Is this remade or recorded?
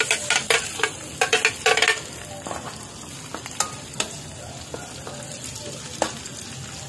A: recorded